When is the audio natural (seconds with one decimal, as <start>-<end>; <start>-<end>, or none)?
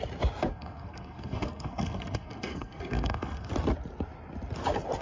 0.0-0.5; 3.5-5.0